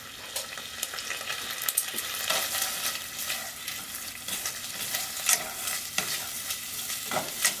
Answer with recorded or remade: recorded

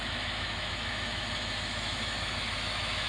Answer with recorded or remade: remade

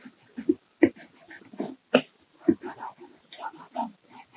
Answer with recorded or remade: recorded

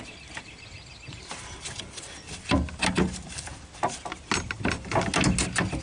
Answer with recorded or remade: recorded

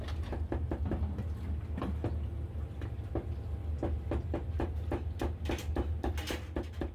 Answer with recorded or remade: recorded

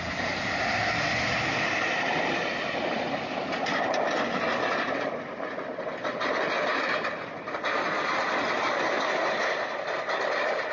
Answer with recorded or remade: recorded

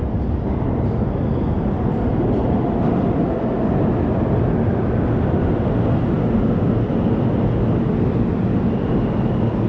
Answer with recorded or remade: recorded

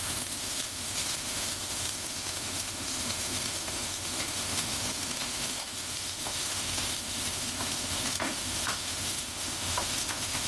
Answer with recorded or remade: remade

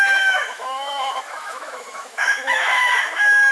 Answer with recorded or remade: remade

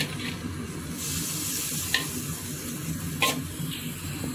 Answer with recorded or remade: recorded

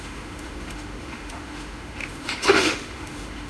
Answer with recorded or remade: remade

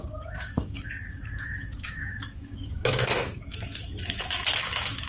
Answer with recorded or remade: remade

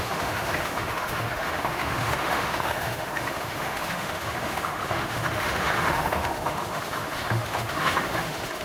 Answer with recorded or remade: remade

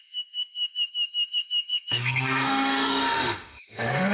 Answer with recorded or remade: remade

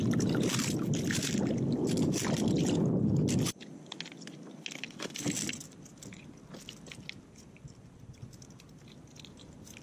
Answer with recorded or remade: recorded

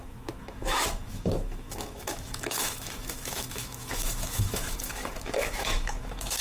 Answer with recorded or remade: remade